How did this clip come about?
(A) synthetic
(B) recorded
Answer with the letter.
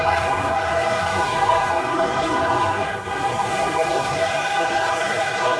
A